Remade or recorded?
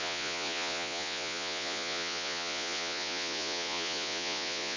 remade